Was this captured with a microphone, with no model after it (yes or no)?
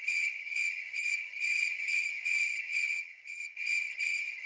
no